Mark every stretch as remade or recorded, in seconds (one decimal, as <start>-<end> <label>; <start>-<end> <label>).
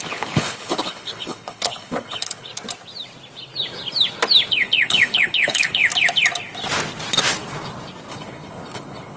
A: 0.0-2.5 remade; 2.5-4.5 recorded; 4.5-5.8 remade; 5.8-8.1 recorded; 8.1-9.2 remade